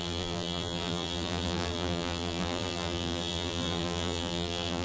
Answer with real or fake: fake